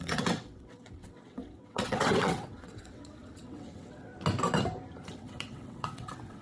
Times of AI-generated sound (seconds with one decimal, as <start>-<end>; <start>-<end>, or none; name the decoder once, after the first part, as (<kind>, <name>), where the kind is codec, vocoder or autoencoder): 0.0-4.1 (vocoder, WaveNeXt); 5.1-6.4